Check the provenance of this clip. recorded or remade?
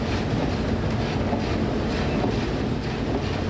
recorded